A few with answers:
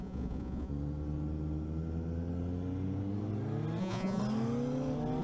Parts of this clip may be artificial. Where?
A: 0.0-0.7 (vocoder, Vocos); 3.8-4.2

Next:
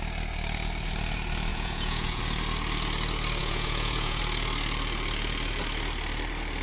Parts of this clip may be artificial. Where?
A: 1.5-2.2 (vocoder, Vocos); 3.4-4.2

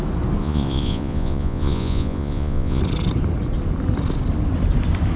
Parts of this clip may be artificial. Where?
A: 0.4-2.8 (vocoder, Vocos)